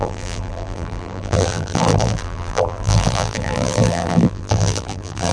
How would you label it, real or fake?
fake